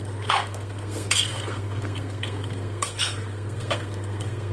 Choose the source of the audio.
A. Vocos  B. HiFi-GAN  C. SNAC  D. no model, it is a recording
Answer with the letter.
C